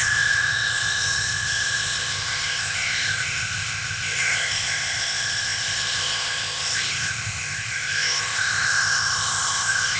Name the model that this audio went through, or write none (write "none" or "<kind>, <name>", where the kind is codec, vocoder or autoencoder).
codec, ZipCodec